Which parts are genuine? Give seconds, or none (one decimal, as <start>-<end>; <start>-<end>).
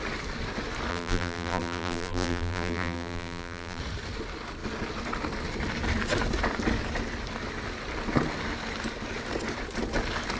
0.0-0.9; 3.8-10.4